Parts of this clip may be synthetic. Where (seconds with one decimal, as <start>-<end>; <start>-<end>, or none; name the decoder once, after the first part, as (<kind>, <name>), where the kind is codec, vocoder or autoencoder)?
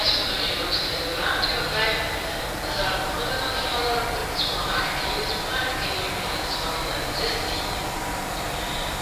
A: 0.0-1.1 (vocoder, BigVGAN v2); 2.4-9.0